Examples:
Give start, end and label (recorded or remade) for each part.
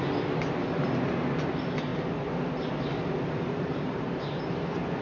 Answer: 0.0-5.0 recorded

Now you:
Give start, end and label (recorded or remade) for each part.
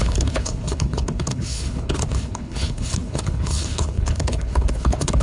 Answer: 0.0-5.2 remade